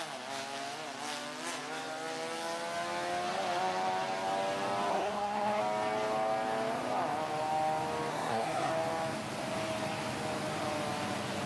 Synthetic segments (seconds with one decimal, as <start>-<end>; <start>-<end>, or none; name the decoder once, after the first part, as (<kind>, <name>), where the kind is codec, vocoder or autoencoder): 4.9-5.6 (codec, SNAC); 8.1-8.7